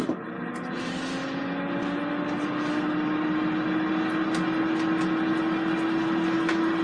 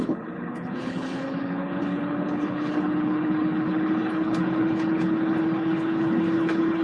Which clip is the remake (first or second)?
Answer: second